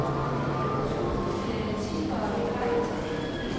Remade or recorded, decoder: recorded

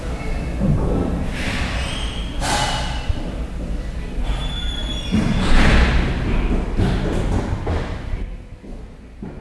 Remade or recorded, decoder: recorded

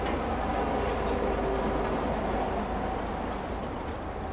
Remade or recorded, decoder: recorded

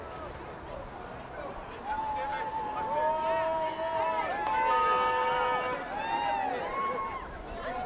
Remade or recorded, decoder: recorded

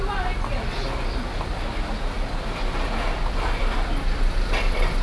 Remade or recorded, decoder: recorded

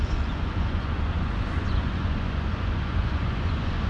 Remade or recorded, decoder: remade, vocoder, Vocos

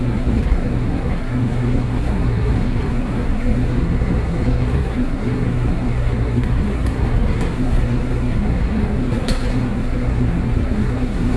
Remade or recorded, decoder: remade, codec, SNAC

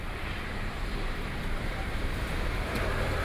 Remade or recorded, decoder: remade, vocoder, BigVGAN v2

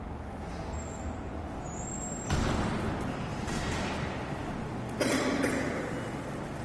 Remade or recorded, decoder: recorded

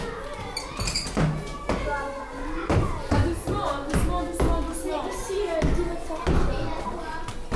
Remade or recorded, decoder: recorded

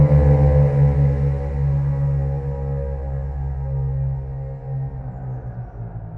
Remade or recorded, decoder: recorded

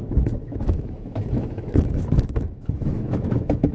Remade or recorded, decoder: remade, autoencoder, DAC-VAE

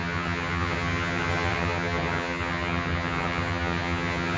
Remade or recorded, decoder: remade, vocoder, HiFi-GAN